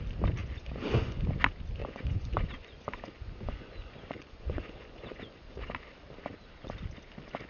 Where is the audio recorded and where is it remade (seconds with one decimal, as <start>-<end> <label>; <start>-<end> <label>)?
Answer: 0.0-0.4 recorded; 0.4-1.3 remade; 1.3-1.8 recorded; 1.8-5.7 remade; 5.7-7.5 recorded

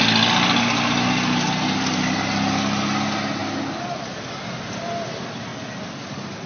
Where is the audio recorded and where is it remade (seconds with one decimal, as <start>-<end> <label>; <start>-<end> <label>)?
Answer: 0.0-6.5 recorded